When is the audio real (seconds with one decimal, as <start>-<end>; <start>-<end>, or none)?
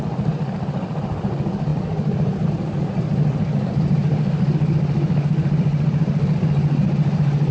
0.0-7.5